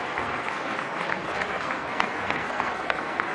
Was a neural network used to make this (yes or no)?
yes